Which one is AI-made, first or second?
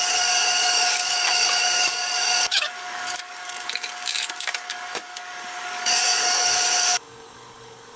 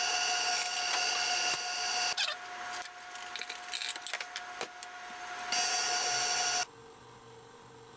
first